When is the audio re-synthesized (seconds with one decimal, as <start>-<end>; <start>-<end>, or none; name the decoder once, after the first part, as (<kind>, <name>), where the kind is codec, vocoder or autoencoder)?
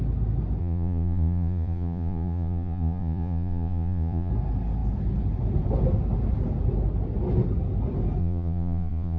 0.6-4.3 (vocoder, Vocos); 8.2-9.2